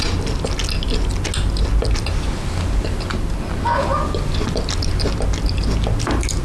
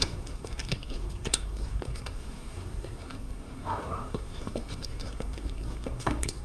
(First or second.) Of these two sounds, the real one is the first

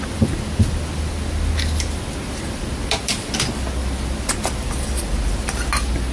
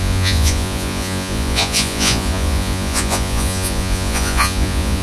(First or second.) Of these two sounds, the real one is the first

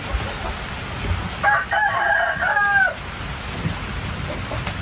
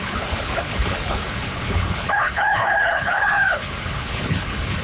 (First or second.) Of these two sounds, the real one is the first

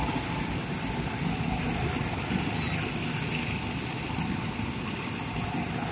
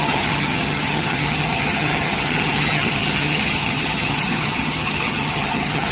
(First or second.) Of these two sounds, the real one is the first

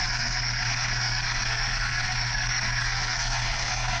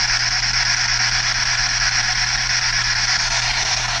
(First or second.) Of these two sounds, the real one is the second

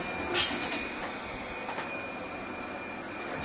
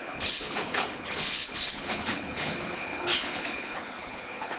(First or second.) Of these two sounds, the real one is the first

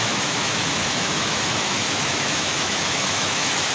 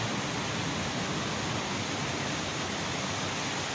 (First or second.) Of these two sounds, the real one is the second